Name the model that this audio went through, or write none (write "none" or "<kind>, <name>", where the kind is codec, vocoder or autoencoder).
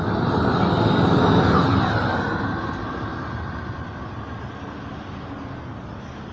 none